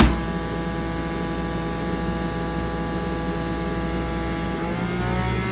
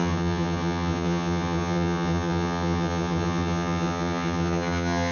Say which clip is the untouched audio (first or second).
first